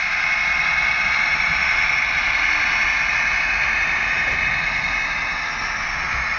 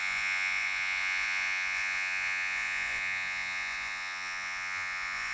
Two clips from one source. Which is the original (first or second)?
first